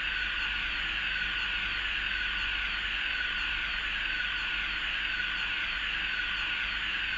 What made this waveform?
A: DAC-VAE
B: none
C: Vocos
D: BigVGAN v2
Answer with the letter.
B